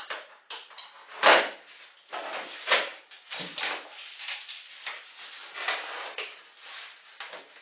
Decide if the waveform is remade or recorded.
recorded